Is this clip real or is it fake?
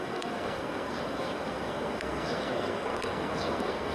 fake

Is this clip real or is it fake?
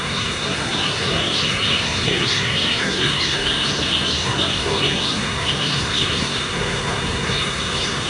fake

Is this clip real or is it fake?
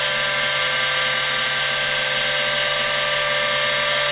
real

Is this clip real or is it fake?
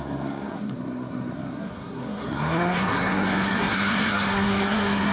fake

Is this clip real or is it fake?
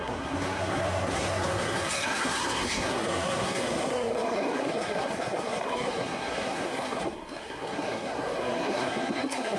fake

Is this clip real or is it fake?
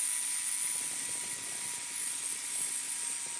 real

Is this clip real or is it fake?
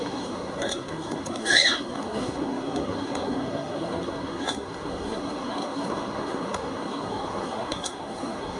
fake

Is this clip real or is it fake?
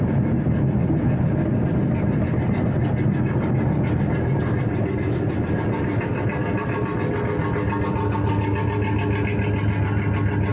real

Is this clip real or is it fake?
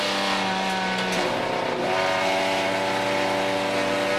real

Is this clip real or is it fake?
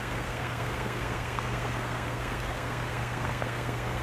fake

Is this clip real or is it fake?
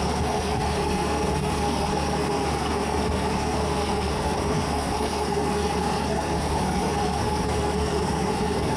fake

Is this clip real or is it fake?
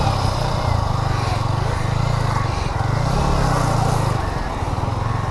real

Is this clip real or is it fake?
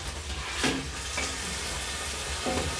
real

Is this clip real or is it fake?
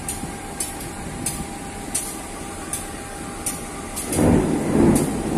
real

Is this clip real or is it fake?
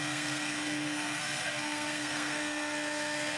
fake